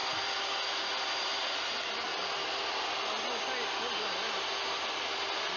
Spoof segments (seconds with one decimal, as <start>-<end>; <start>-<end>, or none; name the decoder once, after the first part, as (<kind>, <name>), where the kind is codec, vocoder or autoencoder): 0.0-1.8 (vocoder, BigVGAN v2)